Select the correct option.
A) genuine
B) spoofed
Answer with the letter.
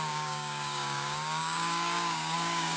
B